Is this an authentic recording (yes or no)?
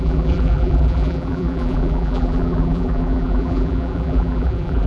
no